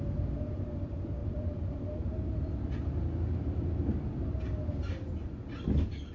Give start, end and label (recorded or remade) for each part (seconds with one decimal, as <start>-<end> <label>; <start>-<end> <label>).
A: 0.0-1.2 recorded; 1.2-2.4 remade; 2.4-6.1 recorded